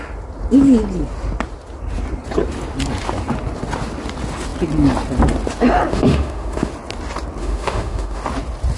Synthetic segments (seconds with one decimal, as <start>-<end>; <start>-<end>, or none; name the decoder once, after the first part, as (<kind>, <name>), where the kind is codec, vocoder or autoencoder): 5.9-6.7 (autoencoder, DAC-VAE); 7.4-8.2